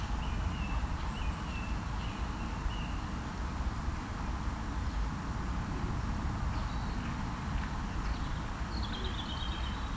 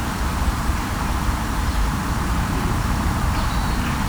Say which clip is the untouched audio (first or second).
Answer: first